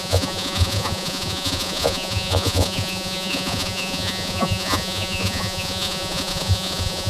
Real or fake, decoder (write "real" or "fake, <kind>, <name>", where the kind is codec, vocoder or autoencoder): fake, vocoder, Vocos